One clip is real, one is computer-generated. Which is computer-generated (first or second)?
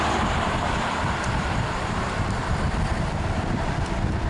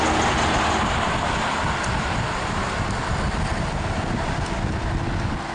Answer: first